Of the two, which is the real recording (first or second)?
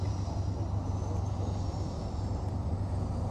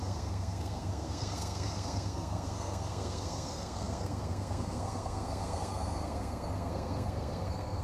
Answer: first